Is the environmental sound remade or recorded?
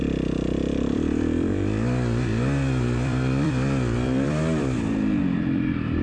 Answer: remade